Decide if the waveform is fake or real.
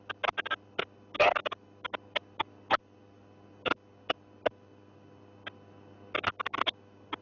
real